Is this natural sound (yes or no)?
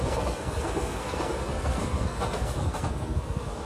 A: no